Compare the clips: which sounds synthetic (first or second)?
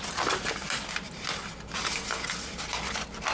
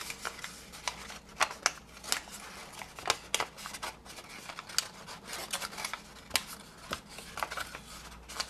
first